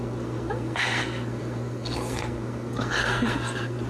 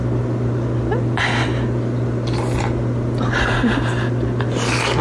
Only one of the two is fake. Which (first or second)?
first